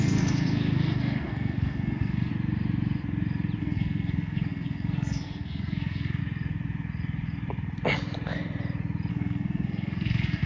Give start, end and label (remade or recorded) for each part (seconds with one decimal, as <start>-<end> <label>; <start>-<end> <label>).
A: 0.0-2.3 remade; 2.3-3.6 recorded; 3.6-6.2 remade; 6.2-9.1 recorded; 9.1-10.5 remade